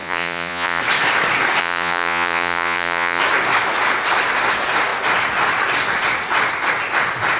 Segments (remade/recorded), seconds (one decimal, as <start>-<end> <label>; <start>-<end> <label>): 0.0-0.8 remade; 0.8-1.6 recorded; 1.6-3.2 remade; 3.2-7.4 recorded